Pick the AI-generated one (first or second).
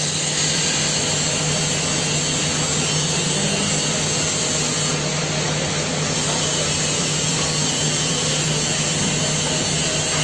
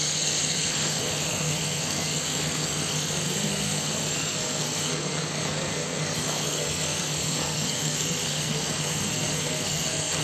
second